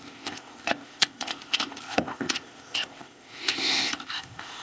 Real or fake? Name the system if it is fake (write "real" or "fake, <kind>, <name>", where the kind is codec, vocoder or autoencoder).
fake, codec, ZipCodec